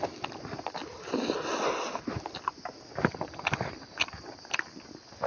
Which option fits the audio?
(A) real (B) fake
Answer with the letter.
A